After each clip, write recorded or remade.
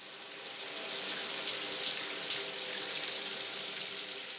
recorded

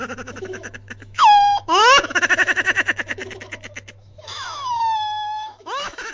remade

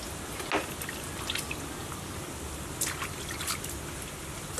recorded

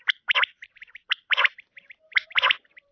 remade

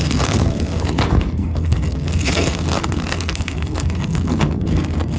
remade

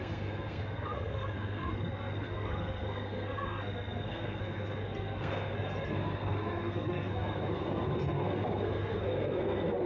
remade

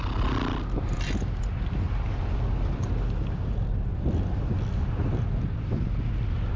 recorded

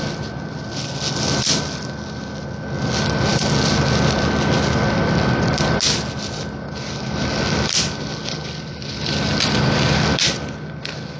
recorded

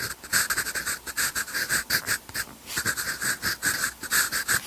recorded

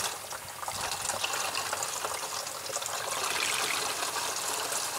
recorded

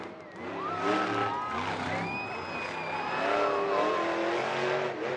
recorded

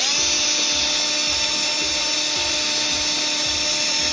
recorded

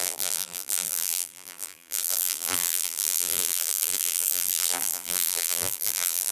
remade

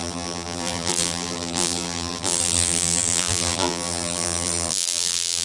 remade